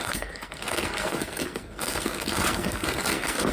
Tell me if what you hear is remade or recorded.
remade